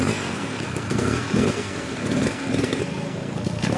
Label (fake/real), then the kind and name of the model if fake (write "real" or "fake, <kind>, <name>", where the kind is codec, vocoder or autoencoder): fake, codec, SNAC